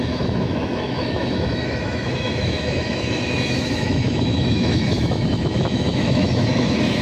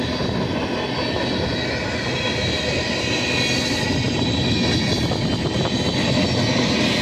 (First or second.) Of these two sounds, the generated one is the first